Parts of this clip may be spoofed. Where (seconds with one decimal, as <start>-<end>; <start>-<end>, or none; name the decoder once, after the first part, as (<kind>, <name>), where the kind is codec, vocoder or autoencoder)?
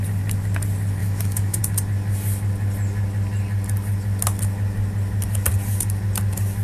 1.0-1.6 (autoencoder, DAC-VAE)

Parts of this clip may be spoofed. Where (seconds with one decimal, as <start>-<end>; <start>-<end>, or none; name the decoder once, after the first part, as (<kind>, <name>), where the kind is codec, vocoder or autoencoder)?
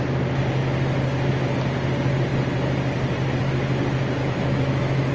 4.2-5.1 (autoencoder, DAC-VAE)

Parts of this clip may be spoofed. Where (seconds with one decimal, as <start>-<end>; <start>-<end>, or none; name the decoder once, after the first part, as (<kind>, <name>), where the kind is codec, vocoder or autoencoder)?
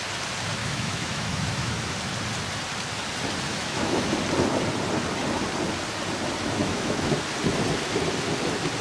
0.6-1.9 (autoencoder, DAC-VAE); 3.5-4.1; 6.6-7.1